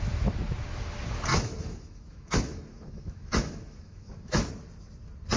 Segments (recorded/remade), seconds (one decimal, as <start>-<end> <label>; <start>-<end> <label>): 0.0-1.3 recorded; 1.3-4.5 remade; 4.5-5.4 recorded